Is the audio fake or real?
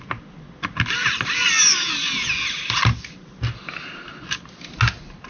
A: real